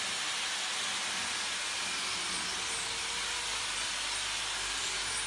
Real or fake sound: real